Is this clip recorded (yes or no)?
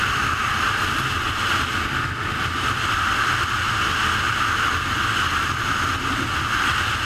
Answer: yes